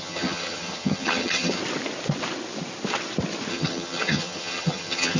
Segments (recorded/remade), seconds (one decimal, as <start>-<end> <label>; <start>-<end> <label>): 0.0-1.6 remade; 1.6-3.5 recorded; 3.5-5.2 remade